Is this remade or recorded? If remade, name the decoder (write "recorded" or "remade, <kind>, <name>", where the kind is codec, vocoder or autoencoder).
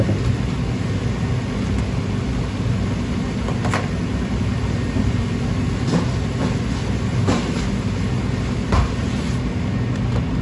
recorded